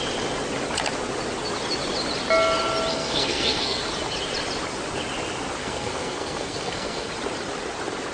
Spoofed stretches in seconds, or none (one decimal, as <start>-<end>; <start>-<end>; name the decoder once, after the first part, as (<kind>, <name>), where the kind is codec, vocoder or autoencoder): 2.9-3.8 (codec, SNAC); 5.6-7.1